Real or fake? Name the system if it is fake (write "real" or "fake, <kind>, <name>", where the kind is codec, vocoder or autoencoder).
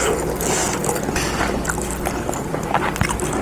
real